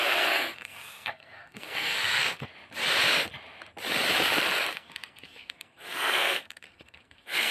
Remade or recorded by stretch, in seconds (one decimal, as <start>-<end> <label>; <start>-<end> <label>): 0.0-2.5 remade; 2.5-4.7 recorded; 4.7-7.5 remade